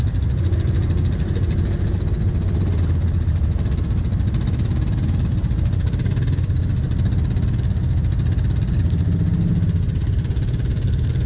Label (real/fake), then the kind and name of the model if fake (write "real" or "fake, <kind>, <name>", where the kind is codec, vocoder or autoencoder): real